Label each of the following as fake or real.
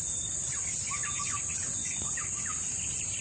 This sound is real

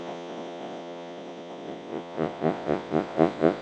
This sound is fake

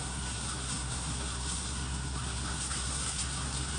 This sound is fake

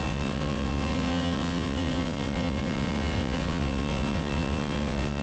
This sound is fake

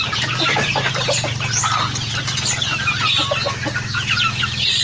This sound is real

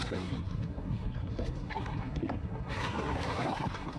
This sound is fake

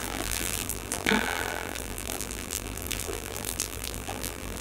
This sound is fake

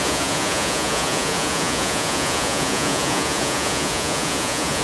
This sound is fake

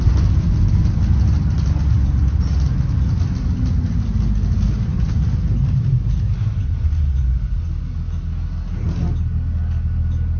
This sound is real